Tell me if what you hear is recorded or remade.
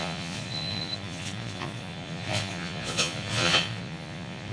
remade